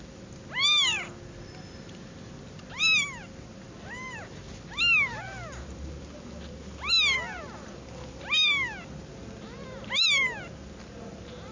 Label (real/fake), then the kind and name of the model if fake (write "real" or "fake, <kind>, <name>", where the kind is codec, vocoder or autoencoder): real